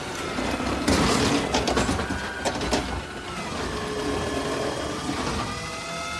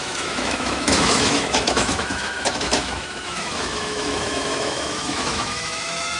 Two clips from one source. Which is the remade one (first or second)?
second